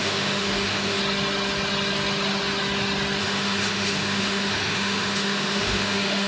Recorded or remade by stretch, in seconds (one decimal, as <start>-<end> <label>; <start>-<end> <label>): 0.0-1.0 remade; 1.0-3.2 recorded; 3.2-6.3 remade